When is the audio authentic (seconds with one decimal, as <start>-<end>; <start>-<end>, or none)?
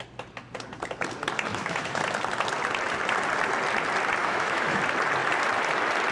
0.0-1.5; 2.0-4.2; 4.8-6.1